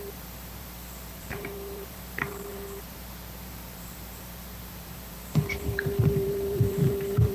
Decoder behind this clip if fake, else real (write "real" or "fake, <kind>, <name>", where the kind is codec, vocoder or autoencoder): fake, vocoder, BigVGAN v2